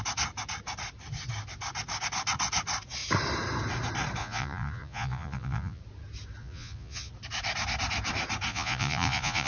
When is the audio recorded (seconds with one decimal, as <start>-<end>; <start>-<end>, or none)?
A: 0.0-4.2; 5.8-6.4; 7.1-8.5